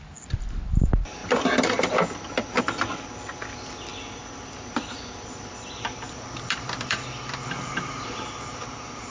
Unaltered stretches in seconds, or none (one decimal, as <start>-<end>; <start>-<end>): 0.0-1.2; 2.6-3.9; 8.6-9.1